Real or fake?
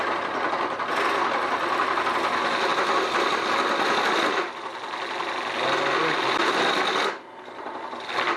real